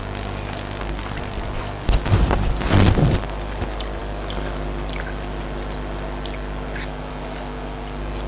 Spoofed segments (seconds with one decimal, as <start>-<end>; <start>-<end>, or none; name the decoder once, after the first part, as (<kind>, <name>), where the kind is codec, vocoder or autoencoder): none